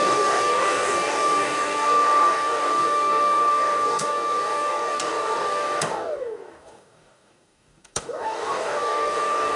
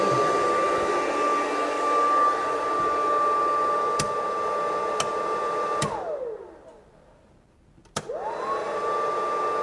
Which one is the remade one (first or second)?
first